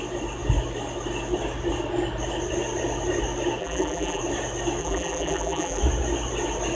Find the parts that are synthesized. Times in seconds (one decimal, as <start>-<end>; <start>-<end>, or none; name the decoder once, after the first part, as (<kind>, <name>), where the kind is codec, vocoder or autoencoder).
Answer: 3.6-4.2 (vocoder, BigVGAN v2); 4.8-5.8